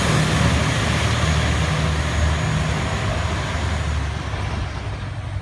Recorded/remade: recorded